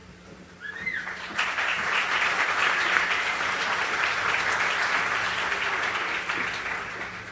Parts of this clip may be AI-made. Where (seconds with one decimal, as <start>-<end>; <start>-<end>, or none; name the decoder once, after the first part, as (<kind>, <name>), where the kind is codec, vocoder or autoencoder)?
0.0-4.4 (vocoder, BigVGAN v2)